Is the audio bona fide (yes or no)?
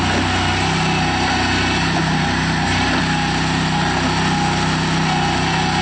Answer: yes